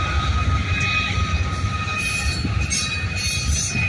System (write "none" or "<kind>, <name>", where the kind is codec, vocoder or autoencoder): none